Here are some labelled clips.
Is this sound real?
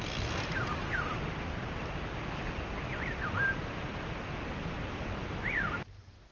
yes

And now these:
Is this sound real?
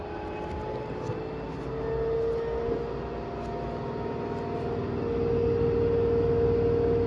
yes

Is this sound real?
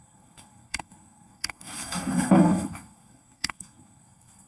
no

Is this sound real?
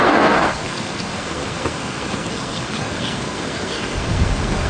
no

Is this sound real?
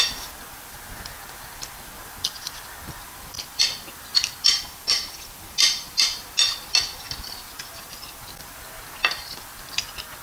yes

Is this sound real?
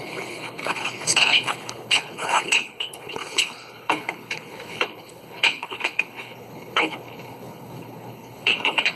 no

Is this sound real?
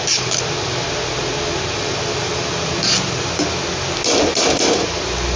yes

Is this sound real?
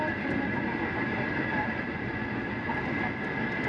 yes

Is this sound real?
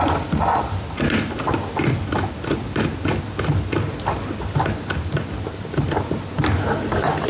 yes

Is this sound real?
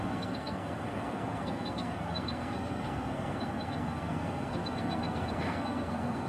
no